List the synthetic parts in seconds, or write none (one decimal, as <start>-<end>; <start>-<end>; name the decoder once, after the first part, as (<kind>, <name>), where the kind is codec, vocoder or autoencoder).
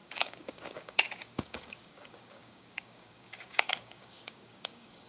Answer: 0.0-5.1 (codec, DAC)